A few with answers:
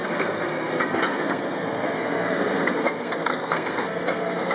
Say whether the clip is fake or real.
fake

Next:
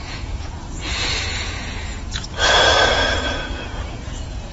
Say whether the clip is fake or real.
fake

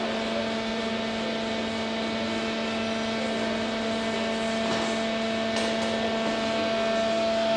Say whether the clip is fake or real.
real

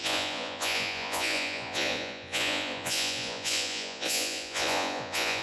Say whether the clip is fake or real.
fake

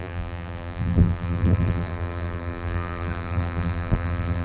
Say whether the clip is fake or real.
fake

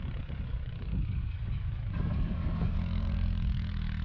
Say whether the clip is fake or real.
fake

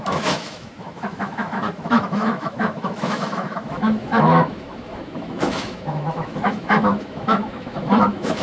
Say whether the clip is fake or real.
fake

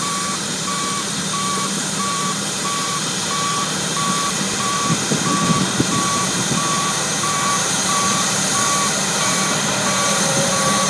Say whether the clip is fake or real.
fake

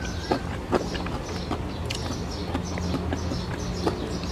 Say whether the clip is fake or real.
real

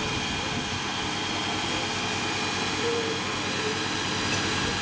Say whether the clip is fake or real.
real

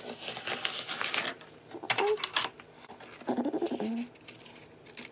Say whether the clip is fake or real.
real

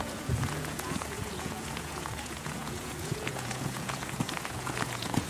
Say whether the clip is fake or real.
fake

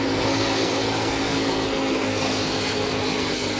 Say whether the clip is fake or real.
fake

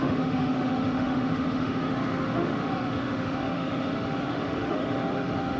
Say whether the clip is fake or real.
fake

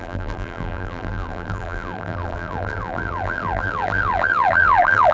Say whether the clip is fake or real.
fake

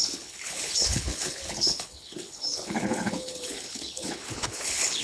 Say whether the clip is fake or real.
fake